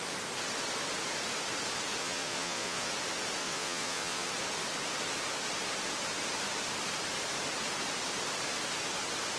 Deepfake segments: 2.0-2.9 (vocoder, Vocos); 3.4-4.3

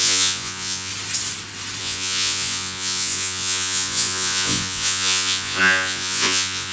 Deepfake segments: 0.0-0.9 (vocoder, Vocos); 1.8-6.7

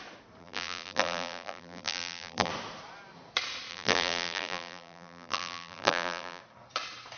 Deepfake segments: 0.4-2.5 (vocoder, BigVGAN v2); 3.7-6.4

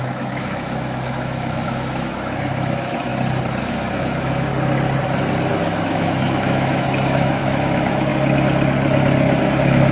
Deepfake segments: 0.0-3.1 (autoencoder, DAC-VAE); 3.6-4.5; 5.5-8.1; 9.4-9.9

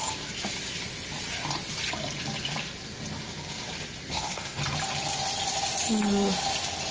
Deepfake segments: 4.1-4.6 (codec, SNAC)

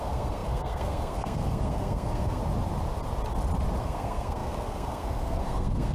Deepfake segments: 0.0-2.4 (codec, SNAC); 3.8-5.9

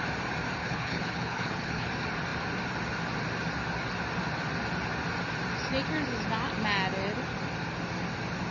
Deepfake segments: 0.6-1.9 (codec, HILCodec)